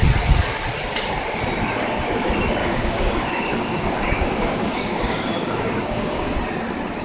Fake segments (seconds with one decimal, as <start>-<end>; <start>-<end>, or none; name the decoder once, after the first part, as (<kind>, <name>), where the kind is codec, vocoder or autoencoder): 2.6-6.4 (codec, DAC)